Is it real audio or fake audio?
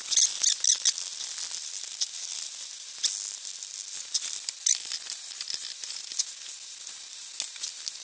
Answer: real